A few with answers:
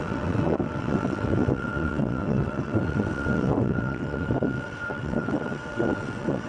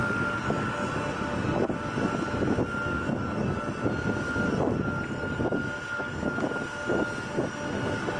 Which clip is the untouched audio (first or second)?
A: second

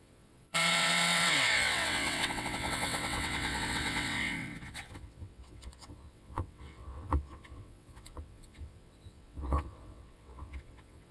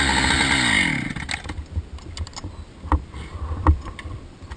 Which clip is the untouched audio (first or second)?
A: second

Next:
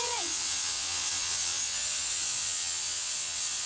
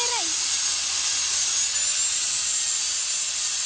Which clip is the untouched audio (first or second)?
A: second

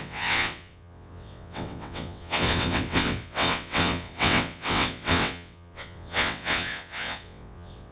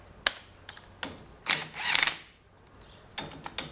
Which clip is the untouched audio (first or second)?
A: second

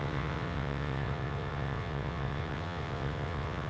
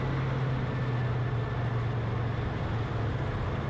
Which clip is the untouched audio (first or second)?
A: second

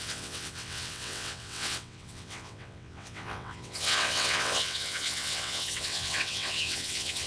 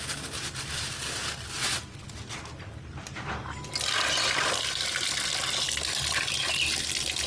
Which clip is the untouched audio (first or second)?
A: second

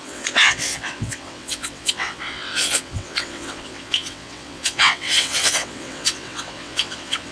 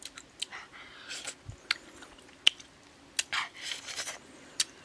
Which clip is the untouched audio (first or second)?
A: second